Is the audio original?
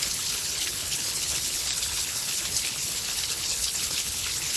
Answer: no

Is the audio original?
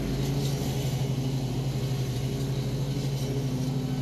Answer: yes